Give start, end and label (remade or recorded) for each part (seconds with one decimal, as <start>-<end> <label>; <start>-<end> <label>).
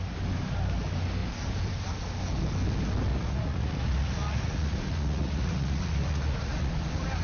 0.0-3.1 recorded; 3.1-6.7 remade; 6.7-7.2 recorded